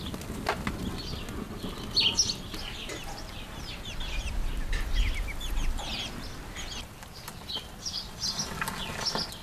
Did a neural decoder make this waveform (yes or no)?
no